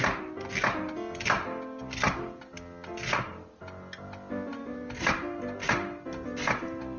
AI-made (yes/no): no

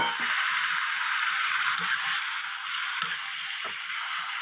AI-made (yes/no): no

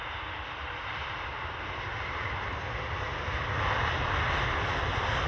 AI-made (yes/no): no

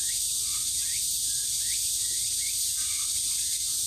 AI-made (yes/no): no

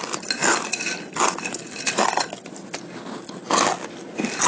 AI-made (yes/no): no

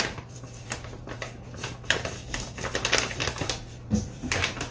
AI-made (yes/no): yes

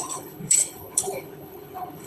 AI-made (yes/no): yes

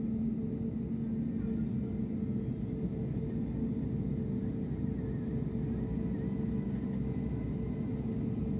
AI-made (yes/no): no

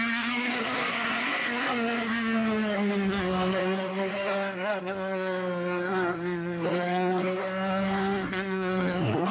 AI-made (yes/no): yes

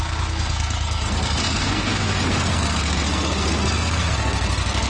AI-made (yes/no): yes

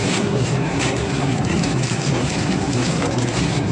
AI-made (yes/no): yes